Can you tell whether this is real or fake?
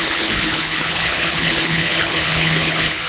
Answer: fake